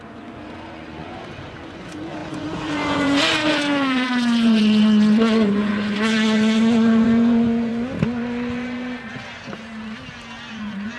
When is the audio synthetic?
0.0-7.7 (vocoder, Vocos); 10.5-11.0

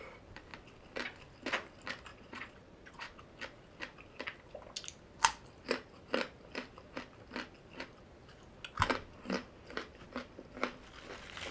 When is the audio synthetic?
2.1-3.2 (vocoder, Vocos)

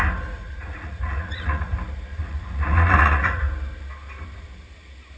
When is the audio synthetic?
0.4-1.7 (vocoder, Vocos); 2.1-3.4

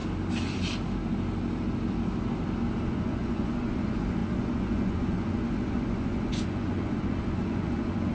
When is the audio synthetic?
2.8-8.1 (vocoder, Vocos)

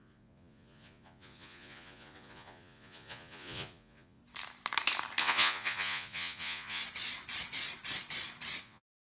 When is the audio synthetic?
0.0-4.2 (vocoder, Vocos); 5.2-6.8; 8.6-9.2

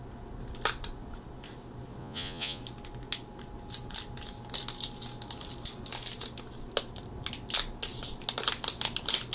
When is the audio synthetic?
2.0-2.6 (vocoder, Vocos)

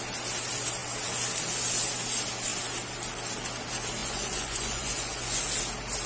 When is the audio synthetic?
4.0-5.4 (vocoder, Vocos)